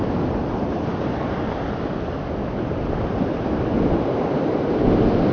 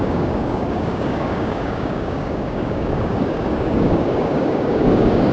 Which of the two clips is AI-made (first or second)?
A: second